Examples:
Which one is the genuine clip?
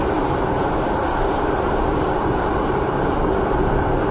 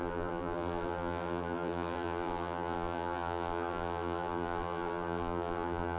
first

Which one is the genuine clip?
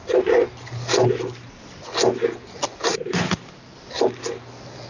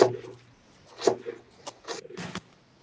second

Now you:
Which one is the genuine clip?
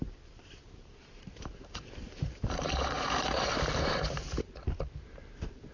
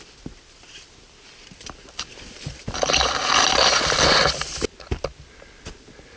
second